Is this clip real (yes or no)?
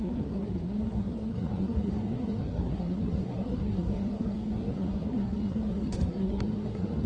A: no